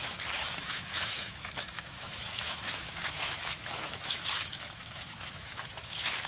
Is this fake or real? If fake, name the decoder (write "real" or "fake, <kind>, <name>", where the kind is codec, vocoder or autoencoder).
fake, autoencoder, DAC-VAE